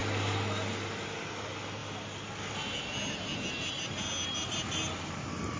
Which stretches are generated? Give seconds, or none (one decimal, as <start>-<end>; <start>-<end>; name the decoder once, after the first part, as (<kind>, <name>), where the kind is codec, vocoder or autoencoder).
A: none